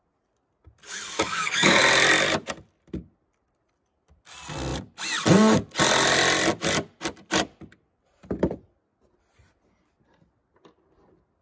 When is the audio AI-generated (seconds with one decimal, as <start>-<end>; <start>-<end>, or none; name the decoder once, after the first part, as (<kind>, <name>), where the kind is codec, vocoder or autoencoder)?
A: 0.8-1.8 (codec, DAC)